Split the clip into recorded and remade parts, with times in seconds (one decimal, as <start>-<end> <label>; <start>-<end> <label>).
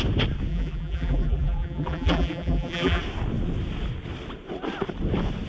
0.0-0.5 recorded; 0.5-3.0 remade; 3.0-5.5 recorded